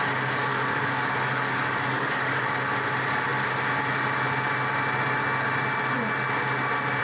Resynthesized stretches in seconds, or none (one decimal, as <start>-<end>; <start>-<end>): 0.5-2.5